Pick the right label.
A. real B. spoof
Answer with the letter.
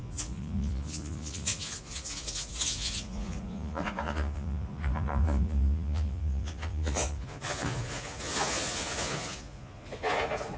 B